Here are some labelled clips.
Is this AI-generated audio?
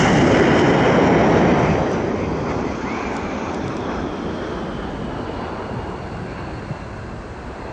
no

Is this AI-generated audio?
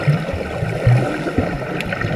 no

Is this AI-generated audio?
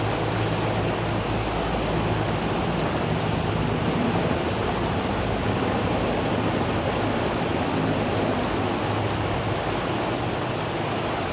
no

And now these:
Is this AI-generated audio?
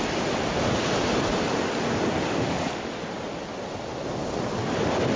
no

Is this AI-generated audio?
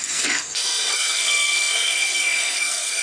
yes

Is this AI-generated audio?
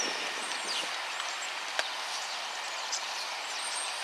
no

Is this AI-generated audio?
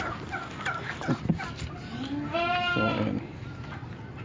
no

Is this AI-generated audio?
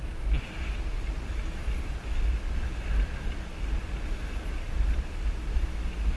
no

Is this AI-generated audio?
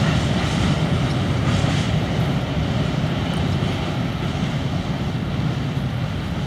no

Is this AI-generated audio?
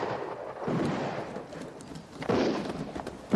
no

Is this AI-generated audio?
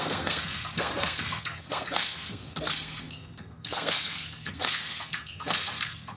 yes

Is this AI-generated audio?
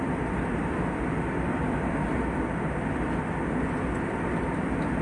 no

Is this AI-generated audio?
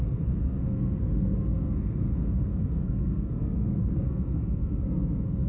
yes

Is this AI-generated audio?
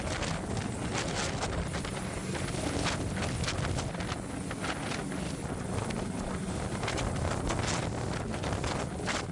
no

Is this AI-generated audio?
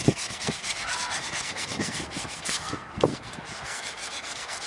yes